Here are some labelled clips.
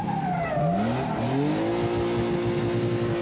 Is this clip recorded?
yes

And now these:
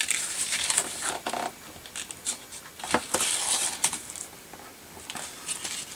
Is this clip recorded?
yes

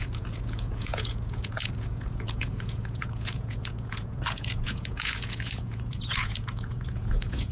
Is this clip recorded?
no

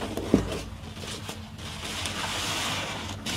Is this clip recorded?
yes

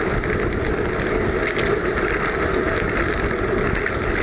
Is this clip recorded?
yes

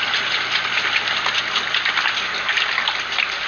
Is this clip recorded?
yes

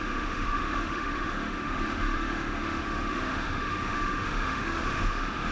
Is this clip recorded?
no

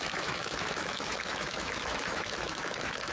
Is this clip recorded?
no